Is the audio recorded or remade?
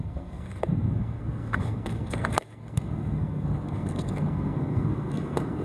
remade